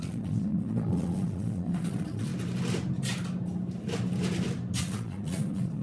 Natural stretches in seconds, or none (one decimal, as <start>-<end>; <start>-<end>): 2.3-4.8